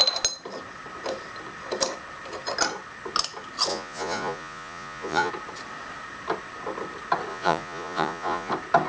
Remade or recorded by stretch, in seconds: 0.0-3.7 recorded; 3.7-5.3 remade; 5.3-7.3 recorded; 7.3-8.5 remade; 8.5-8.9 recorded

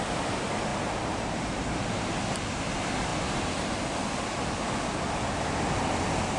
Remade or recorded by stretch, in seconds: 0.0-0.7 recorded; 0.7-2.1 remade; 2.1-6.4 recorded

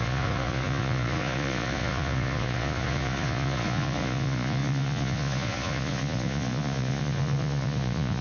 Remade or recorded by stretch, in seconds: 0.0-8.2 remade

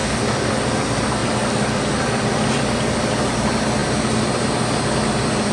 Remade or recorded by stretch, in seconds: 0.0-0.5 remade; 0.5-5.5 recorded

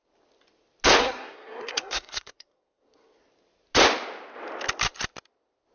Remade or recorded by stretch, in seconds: 0.0-1.0 recorded; 1.0-3.2 remade; 3.2-5.7 recorded